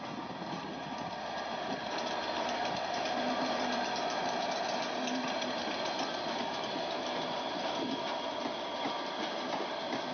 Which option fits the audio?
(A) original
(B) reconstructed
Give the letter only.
B